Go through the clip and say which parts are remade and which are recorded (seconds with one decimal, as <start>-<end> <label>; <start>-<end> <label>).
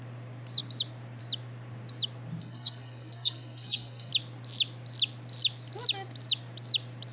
0.0-2.4 recorded; 2.4-4.1 remade; 4.1-7.1 recorded